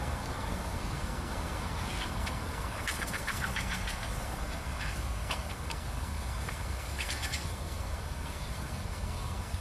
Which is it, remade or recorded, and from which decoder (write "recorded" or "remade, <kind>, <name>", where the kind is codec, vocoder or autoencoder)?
remade, codec, SNAC